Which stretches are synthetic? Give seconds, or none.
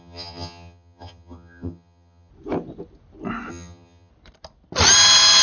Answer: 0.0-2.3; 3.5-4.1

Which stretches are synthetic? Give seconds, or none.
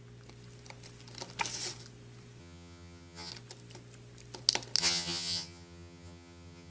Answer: 2.4-3.3; 4.8-6.7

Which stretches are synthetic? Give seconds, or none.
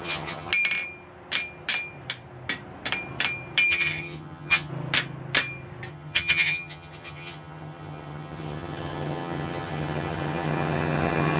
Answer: 0.0-0.5; 3.7-4.7; 5.9-11.4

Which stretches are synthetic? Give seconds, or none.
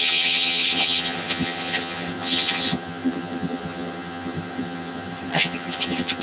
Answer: 0.0-6.2